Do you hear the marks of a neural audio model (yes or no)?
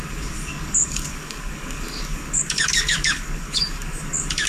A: yes